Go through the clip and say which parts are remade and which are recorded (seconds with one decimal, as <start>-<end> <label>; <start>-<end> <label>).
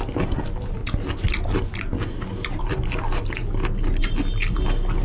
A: 0.0-5.0 recorded